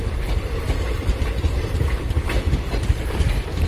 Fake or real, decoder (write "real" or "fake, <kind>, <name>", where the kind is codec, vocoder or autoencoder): fake, vocoder, BigVGAN v2